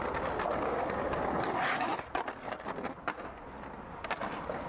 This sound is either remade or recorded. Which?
recorded